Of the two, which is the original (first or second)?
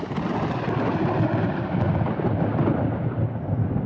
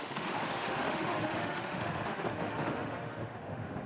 first